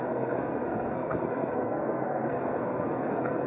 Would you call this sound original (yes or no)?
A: no